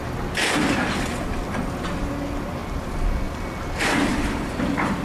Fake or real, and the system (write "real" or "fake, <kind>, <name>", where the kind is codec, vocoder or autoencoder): real